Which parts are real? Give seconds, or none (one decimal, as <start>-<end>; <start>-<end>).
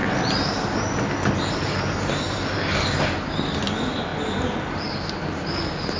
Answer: 0.0-6.0